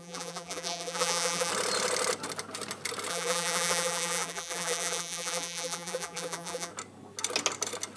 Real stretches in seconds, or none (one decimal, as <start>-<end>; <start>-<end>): 1.5-3.1; 6.7-8.0